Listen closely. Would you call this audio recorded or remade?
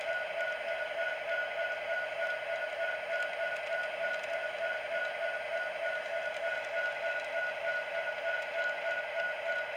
recorded